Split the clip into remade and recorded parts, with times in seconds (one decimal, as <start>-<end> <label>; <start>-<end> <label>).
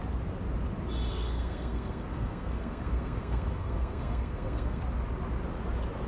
0.0-1.1 recorded; 1.1-4.8 remade; 4.8-6.1 recorded